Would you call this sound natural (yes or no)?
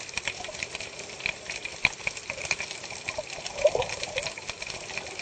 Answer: yes